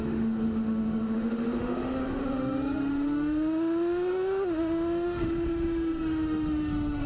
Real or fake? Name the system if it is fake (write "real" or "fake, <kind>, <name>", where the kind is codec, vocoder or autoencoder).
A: fake, autoencoder, DAC-VAE